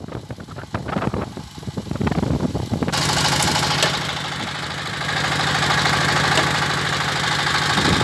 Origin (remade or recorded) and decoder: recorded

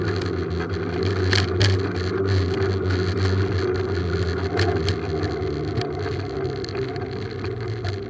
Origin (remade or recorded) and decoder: recorded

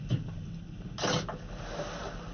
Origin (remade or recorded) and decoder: recorded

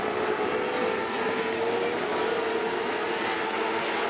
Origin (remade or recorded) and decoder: recorded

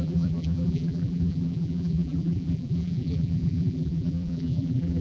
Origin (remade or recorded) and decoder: remade, vocoder, BigVGAN v2